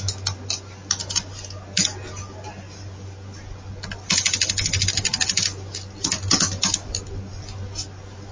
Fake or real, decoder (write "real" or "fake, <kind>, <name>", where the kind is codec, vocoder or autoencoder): real